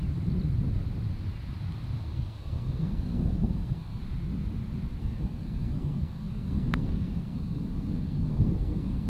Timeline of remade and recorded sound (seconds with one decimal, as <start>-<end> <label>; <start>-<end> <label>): 0.0-2.0 recorded; 2.0-4.0 remade; 4.0-5.0 recorded; 5.0-9.1 remade